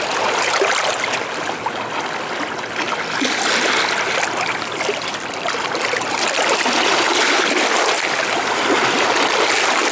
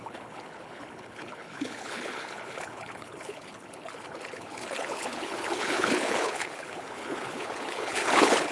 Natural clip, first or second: first